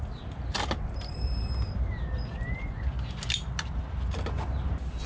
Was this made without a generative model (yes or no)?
yes